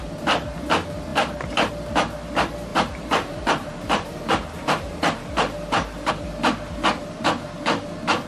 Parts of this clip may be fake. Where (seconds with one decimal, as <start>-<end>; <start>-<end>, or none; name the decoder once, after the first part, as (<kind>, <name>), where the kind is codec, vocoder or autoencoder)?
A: 1.1-1.7 (vocoder, BigVGAN v2); 2.7-6.1